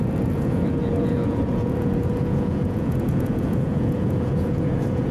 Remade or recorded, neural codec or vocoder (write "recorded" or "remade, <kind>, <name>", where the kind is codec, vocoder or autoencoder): remade, vocoder, Vocos